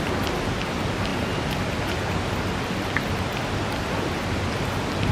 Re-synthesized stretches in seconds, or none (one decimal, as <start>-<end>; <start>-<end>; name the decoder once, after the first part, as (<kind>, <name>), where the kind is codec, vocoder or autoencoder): none